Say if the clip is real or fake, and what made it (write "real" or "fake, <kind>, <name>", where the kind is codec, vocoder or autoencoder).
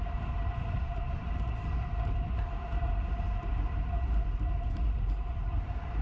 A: fake, vocoder, BigVGAN v2